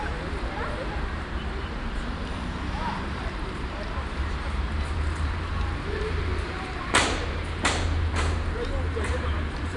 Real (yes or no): no